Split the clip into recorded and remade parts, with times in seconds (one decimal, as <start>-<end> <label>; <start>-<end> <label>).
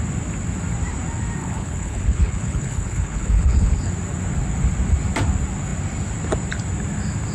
0.0-1.4 recorded; 1.4-3.9 remade; 3.9-7.3 recorded